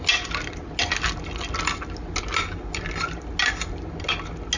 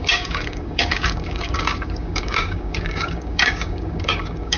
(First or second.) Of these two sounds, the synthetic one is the second